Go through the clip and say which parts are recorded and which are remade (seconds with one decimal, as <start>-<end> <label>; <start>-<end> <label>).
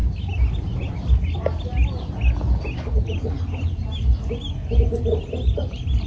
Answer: 0.0-6.1 recorded